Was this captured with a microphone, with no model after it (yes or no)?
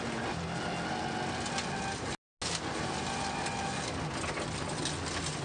yes